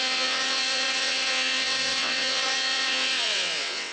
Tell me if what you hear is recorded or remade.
remade